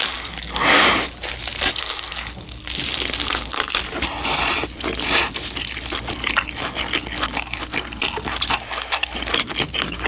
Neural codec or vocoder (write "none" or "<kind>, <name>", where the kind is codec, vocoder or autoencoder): none